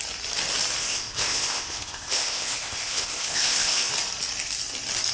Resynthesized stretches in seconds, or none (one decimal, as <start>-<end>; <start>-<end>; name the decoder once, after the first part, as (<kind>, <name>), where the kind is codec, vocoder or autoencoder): 0.8-3.9 (codec, ZipCodec)